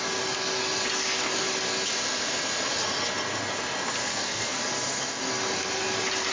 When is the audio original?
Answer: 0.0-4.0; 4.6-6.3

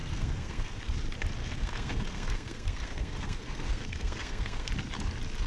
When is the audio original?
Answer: 0.8-1.4; 4.7-5.5